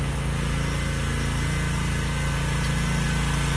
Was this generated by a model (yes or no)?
no